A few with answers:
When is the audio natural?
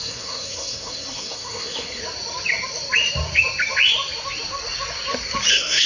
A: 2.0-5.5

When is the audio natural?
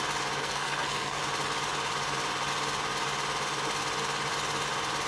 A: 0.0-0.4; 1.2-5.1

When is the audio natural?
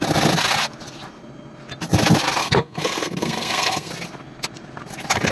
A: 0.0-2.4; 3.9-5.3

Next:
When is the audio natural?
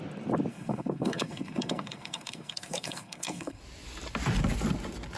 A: 0.0-0.5; 3.6-5.2